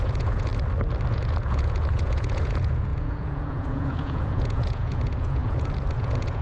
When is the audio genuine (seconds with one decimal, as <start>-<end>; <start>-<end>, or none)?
0.5-1.1